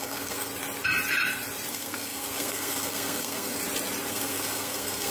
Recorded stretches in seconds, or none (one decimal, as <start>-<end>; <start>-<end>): 0.5-1.7; 3.6-4.1